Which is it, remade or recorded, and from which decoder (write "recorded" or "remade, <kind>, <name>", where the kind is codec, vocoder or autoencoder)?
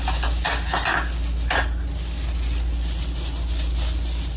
recorded